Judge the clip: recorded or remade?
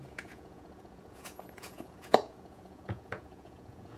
remade